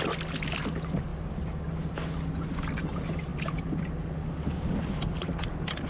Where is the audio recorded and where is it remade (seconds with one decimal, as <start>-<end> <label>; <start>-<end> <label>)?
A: 0.0-5.9 recorded